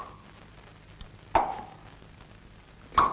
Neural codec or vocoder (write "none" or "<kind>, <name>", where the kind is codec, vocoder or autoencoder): none